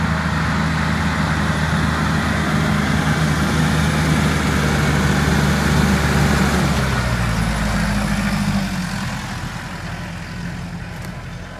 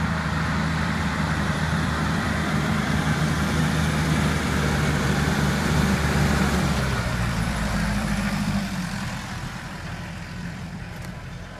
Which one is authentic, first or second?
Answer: first